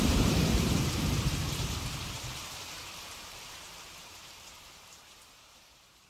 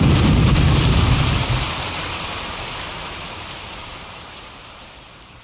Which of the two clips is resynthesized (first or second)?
first